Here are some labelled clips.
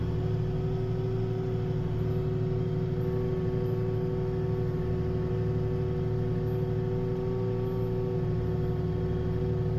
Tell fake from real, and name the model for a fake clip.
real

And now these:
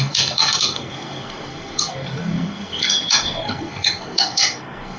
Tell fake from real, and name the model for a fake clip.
fake, codec, SNAC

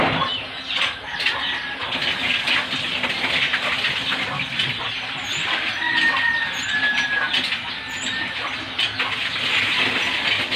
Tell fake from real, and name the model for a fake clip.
real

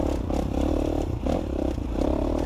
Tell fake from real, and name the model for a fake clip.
fake, vocoder, BigVGAN v2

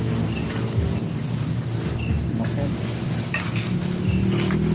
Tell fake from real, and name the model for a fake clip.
real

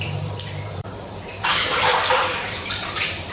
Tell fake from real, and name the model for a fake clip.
fake, vocoder, BigVGAN v2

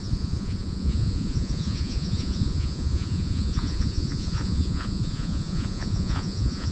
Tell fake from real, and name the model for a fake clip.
fake, vocoder, Vocos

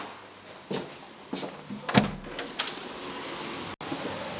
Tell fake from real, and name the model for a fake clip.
real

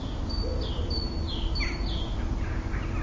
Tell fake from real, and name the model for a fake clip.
real